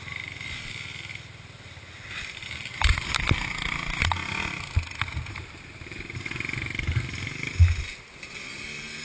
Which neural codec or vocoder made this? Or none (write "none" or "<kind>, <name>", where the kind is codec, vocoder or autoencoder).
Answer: none